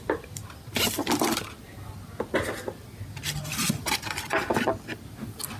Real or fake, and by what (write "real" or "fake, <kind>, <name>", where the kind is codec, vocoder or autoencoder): real